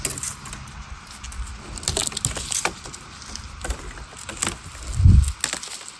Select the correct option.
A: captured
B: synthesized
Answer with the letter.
A